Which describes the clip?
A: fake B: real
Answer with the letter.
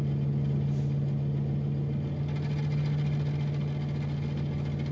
B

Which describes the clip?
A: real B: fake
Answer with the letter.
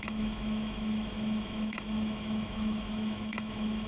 B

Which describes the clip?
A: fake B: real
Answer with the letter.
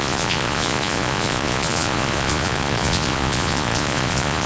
A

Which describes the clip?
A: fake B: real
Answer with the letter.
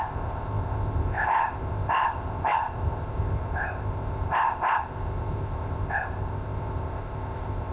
A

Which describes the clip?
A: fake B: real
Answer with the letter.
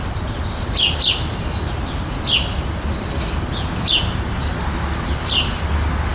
B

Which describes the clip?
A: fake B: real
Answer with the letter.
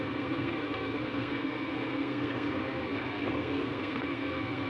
A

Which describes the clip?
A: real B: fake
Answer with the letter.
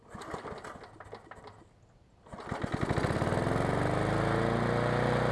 A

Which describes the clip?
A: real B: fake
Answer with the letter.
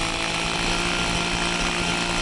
A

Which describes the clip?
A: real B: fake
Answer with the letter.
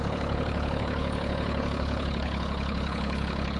B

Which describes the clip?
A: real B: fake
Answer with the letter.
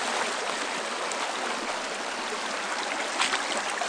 A